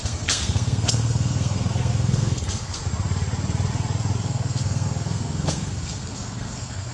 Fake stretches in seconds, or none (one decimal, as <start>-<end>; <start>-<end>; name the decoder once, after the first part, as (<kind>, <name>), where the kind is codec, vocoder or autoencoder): 0.0-2.8 (codec, SNAC); 4.2-6.9